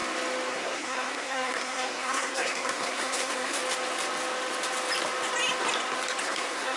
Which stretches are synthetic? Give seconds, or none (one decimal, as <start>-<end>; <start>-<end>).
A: 0.5-3.6; 6.2-6.8